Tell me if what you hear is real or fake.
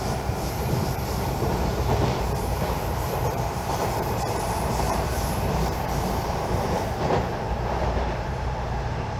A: fake